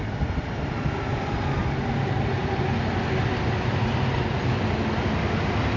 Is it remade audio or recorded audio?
recorded